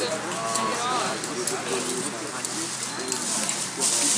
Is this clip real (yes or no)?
yes